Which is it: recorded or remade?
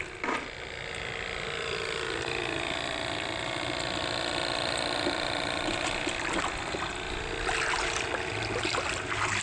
recorded